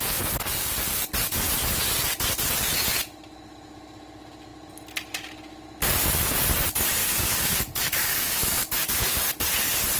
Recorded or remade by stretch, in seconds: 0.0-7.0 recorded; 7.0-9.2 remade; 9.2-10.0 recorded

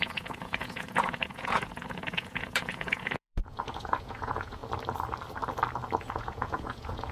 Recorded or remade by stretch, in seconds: 0.0-4.6 remade; 4.6-6.0 recorded; 6.0-7.1 remade

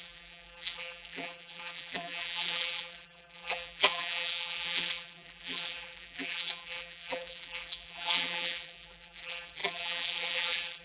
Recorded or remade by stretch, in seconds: 0.0-10.8 remade

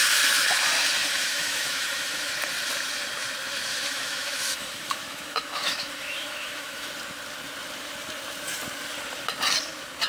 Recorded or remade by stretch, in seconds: 0.0-1.1 recorded; 1.1-2.3 remade; 2.3-3.7 recorded; 3.7-6.9 remade; 6.9-10.1 recorded

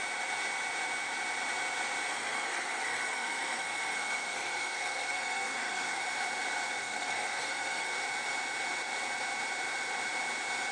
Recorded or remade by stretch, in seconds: 0.0-2.1 recorded; 2.1-6.0 remade; 6.0-6.8 recorded; 6.8-7.9 remade; 7.9-10.7 recorded